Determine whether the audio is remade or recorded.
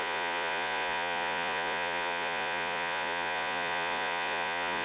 remade